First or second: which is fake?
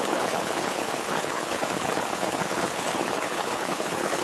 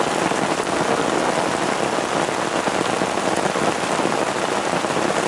first